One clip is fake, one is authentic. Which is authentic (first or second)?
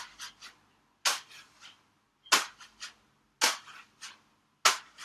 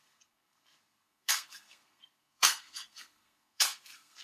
first